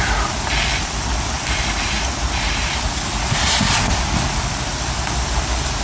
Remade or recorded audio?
recorded